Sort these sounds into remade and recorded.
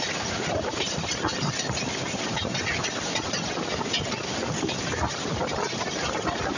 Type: recorded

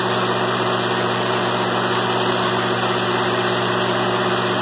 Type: recorded